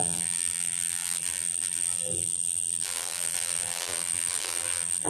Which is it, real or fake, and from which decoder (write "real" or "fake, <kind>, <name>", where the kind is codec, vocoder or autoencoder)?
fake, vocoder, BigVGAN v2